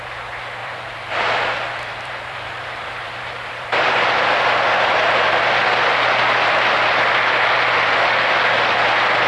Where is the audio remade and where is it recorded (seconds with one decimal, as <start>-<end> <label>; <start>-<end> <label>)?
0.0-0.6 recorded; 0.6-4.4 remade; 4.4-9.3 recorded